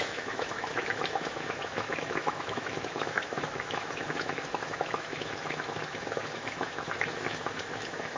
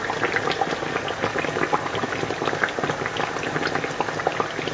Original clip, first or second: second